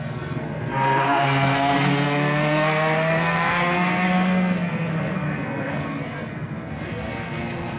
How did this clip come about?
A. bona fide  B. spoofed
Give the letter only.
B